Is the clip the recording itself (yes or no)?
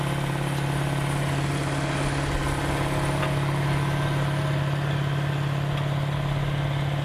yes